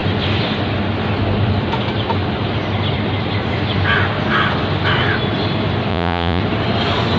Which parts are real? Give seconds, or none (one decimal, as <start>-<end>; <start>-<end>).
0.0-5.9; 6.4-7.2